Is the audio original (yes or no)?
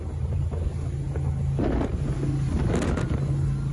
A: yes